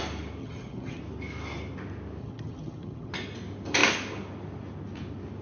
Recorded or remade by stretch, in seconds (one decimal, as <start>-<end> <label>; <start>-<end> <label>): 0.0-0.4 recorded; 0.4-1.0 remade; 1.0-2.2 recorded; 2.2-3.1 remade; 3.1-5.4 recorded